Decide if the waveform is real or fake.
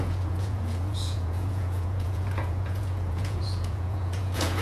fake